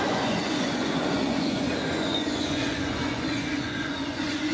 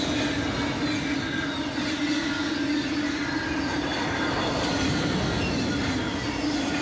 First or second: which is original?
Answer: second